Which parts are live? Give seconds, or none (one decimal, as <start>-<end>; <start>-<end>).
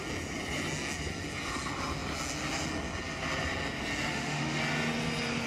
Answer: 0.0-4.1; 4.6-5.5